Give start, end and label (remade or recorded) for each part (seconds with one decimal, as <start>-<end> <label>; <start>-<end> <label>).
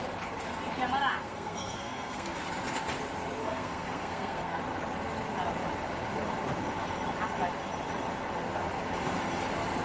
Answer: 0.0-1.1 recorded; 1.1-2.4 remade; 2.4-3.4 recorded; 3.4-4.6 remade; 4.6-9.8 recorded